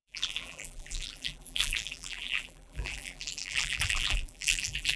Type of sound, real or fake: fake